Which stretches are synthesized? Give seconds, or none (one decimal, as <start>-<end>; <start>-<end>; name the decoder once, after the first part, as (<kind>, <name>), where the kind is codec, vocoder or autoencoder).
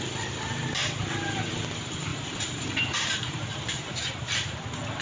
1.0-1.6 (vocoder, BigVGAN v2); 2.1-4.6